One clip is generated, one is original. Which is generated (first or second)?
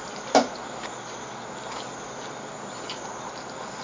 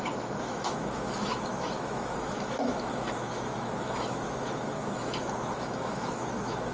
second